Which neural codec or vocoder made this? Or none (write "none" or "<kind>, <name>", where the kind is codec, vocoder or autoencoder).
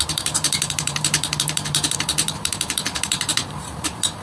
vocoder, BigVGAN v2